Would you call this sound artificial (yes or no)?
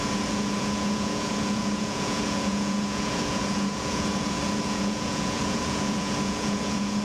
yes